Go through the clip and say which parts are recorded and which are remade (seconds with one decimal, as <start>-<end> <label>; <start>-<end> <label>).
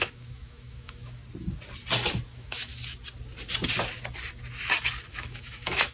0.0-1.2 remade; 1.2-2.3 recorded; 2.3-2.7 remade; 2.7-5.1 recorded; 5.1-5.9 remade